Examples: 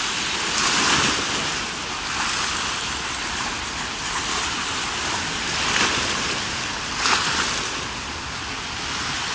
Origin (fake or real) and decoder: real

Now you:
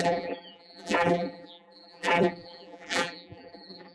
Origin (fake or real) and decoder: fake, vocoder, BigVGAN v2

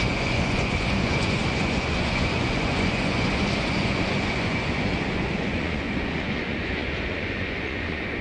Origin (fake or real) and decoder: fake, vocoder, Vocos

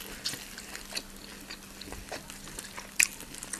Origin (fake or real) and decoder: real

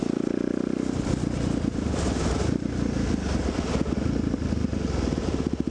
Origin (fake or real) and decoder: real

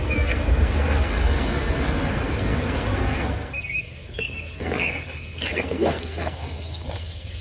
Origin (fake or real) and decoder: fake, codec, SNAC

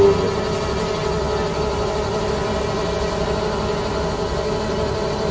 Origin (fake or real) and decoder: real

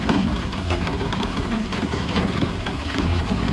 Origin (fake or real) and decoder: fake, codec, SNAC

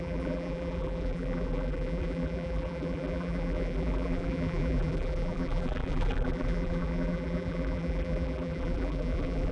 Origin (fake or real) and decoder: fake, vocoder, BigVGAN v2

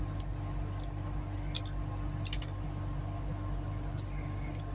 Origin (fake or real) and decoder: real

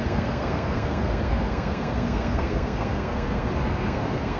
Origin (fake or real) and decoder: fake, codec, SNAC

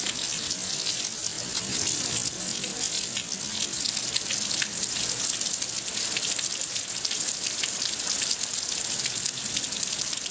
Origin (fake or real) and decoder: real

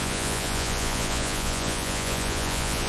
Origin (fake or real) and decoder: fake, vocoder, Vocos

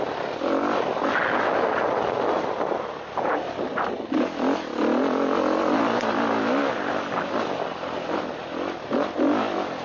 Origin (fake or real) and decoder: real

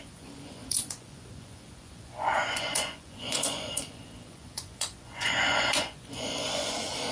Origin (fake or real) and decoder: fake, vocoder, Vocos